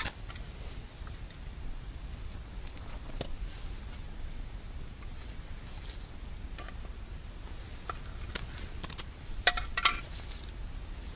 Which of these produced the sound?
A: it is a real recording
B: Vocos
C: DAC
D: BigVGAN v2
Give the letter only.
A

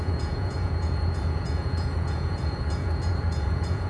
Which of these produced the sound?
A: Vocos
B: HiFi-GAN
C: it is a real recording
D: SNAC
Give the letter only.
A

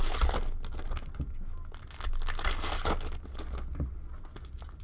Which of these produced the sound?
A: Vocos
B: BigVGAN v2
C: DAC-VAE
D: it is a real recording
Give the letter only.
D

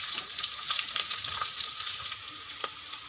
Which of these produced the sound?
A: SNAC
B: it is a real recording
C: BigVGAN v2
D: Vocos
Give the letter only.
D